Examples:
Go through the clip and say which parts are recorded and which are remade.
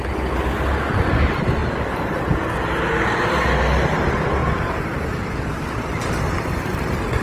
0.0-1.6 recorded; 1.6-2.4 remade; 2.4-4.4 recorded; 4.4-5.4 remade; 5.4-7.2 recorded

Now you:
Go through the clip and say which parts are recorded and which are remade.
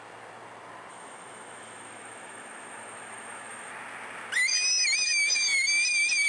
0.0-0.9 recorded; 0.9-3.7 remade; 3.7-6.3 recorded